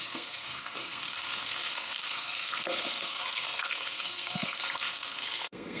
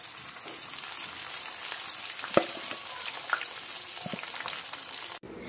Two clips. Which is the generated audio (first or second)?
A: first